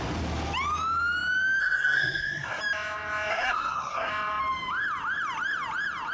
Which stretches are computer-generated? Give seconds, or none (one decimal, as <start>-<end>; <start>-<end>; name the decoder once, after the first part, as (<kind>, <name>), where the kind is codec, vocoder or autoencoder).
1.6-2.6 (codec, SNAC); 3.3-4.1

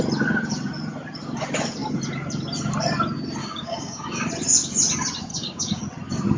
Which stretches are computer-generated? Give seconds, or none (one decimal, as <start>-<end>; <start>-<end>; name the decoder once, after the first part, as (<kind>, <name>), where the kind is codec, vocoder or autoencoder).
3.4-4.3 (codec, DAC); 5.3-5.8

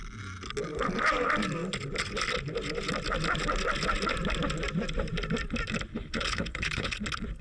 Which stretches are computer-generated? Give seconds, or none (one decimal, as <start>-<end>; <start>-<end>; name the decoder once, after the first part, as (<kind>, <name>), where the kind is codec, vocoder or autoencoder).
5.9-7.0 (codec, HILCodec)